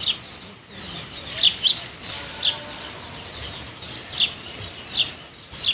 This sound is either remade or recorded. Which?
recorded